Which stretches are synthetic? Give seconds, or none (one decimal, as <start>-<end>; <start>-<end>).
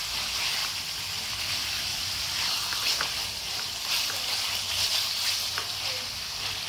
none